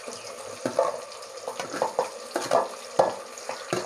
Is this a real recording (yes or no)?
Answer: yes